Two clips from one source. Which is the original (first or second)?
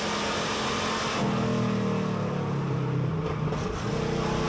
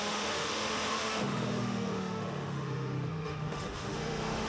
first